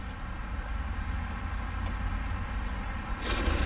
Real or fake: real